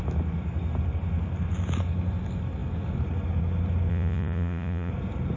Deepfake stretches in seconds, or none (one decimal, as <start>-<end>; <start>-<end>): 3.9-4.9

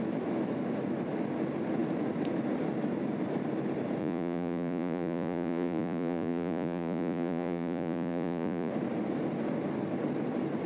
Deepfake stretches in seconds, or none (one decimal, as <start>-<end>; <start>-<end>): 4.0-8.7

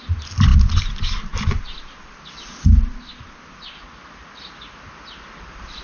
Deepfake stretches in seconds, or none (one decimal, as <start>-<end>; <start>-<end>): none

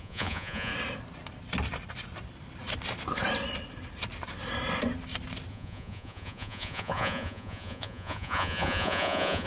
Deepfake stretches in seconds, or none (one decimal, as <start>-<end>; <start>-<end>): 0.0-0.7; 5.5-9.5

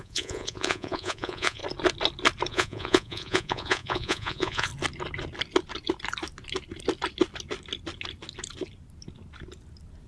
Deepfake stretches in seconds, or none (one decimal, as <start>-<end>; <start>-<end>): 0.0-1.6; 2.5-4.7

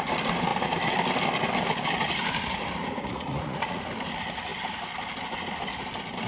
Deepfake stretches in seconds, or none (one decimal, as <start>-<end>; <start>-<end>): 2.8-3.9